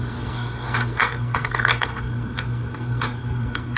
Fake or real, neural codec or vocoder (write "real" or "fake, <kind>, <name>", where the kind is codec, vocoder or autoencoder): fake, codec, SNAC